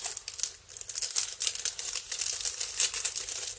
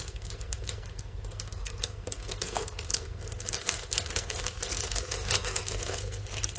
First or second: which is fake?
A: second